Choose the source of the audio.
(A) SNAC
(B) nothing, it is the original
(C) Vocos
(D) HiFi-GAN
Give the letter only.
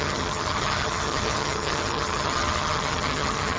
D